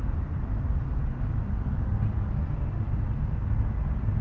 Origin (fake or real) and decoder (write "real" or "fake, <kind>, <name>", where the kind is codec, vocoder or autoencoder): real